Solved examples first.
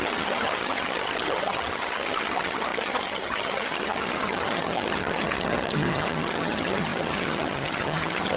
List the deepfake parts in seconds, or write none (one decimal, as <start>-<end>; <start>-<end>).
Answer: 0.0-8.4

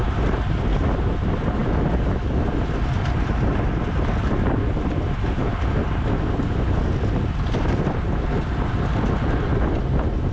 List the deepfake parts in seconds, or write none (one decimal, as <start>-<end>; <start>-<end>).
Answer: none

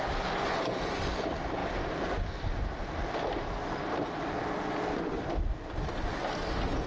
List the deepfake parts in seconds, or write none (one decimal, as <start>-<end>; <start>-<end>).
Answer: none